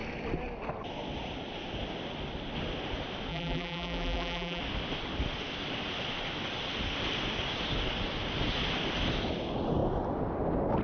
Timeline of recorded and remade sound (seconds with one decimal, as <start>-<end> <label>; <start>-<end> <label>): 0.0-3.3 recorded; 3.3-4.6 remade; 4.6-10.8 recorded